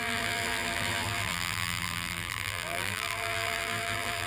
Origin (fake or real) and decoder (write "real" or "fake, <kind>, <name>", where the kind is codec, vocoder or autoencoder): fake, vocoder, BigVGAN v2